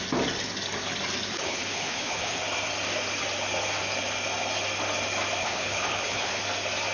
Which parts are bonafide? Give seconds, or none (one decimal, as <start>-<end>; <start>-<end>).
0.0-1.3; 2.4-5.4; 6.4-6.9